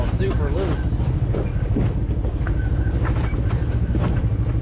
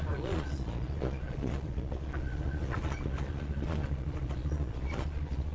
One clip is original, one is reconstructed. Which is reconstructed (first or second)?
second